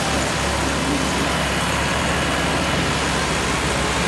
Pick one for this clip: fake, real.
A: real